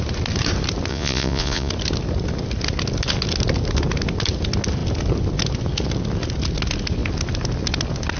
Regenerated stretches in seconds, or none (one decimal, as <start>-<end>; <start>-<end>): 0.9-1.7